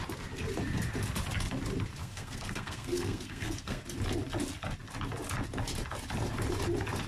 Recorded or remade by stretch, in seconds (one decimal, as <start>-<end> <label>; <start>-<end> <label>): 0.0-2.0 recorded; 2.0-3.8 remade; 3.8-7.1 recorded